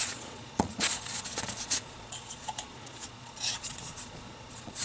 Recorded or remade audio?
remade